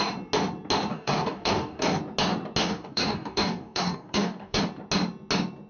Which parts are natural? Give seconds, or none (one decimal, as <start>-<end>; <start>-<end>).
0.0-0.9; 2.0-2.6; 4.6-5.7